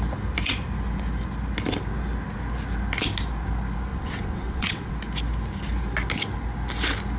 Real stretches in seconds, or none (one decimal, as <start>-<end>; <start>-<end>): 0.0-3.9; 4.9-7.2